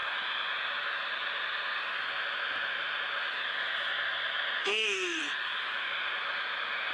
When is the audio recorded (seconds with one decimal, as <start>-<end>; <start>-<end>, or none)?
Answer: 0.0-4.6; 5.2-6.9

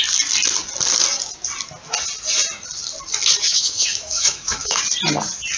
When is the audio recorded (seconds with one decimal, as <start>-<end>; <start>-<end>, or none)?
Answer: 0.0-3.5; 4.8-5.6

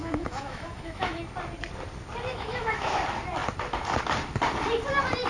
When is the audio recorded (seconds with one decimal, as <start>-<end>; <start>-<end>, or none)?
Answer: 1.2-2.3; 3.0-5.3

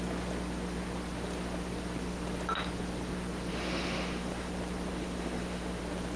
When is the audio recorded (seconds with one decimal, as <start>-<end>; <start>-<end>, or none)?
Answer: 0.0-3.5; 4.5-4.9; 5.8-6.2

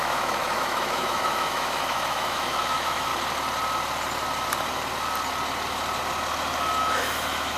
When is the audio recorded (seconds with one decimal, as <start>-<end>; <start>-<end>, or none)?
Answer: 3.1-6.8

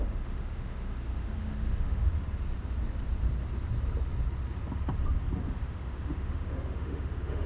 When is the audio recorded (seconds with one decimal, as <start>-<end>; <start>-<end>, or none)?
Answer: 2.1-5.4